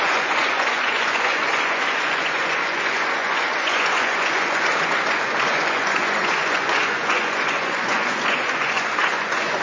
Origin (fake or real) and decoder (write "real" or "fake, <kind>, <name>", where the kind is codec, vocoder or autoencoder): fake, vocoder, Vocos